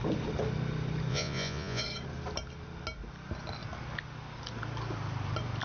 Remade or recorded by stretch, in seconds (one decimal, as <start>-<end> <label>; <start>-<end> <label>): 0.0-1.1 recorded; 1.1-1.8 remade; 1.8-5.6 recorded